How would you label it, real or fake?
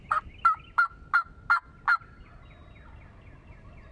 real